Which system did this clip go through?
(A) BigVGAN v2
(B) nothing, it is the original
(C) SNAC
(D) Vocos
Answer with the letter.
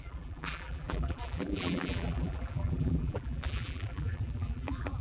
A